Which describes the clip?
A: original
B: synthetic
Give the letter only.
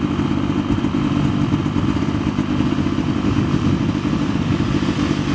A